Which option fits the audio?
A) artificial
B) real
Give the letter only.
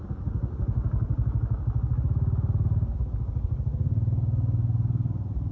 B